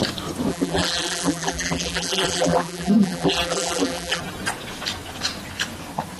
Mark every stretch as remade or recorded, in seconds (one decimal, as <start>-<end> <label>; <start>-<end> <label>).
0.0-0.5 recorded; 0.5-4.2 remade; 4.2-6.2 recorded